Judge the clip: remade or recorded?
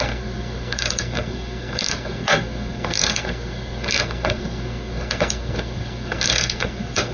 remade